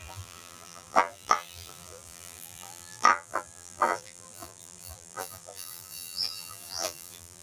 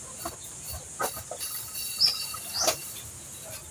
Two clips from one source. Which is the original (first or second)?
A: second